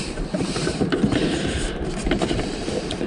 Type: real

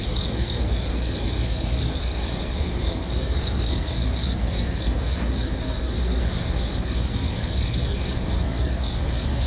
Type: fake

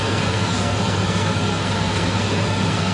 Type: fake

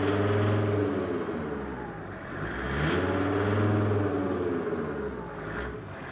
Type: real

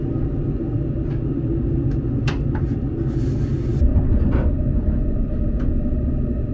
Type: real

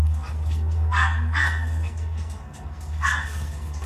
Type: fake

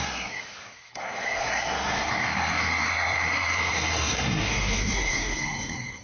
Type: fake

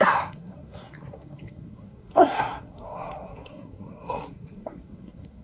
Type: fake